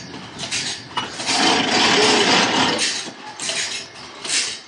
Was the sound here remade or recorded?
recorded